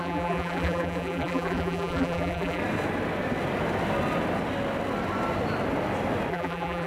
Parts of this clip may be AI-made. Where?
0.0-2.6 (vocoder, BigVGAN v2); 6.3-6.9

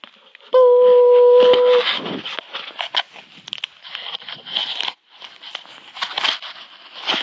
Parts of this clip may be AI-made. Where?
4.6-5.2 (vocoder, BigVGAN v2)